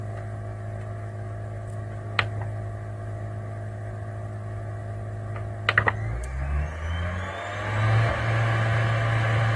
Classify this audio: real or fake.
real